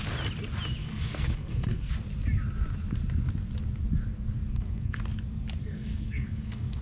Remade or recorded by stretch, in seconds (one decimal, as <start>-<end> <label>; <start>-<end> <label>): 0.0-0.8 recorded; 0.8-1.9 remade; 1.9-4.5 recorded; 4.5-5.0 remade; 5.0-5.6 recorded; 5.6-6.8 remade